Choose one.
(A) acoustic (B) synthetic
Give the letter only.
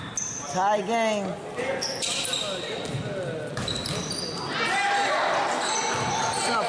A